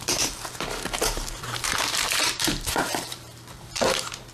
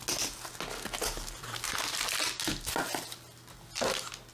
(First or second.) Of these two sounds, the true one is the second